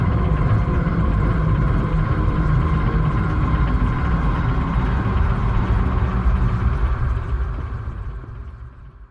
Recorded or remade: remade